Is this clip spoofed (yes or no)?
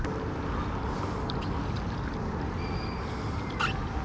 no